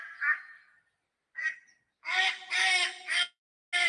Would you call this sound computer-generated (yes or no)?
no